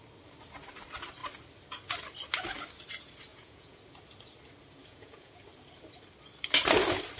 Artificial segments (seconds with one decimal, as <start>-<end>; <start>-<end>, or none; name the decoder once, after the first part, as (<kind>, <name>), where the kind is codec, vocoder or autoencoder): 3.3-3.8 (vocoder, Vocos); 4.8-5.4